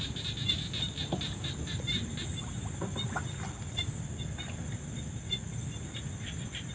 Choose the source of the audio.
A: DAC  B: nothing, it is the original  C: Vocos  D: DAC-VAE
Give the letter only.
B